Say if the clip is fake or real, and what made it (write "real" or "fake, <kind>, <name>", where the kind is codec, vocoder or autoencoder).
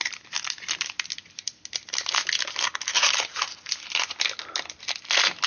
real